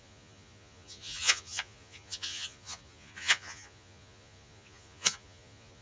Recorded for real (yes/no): no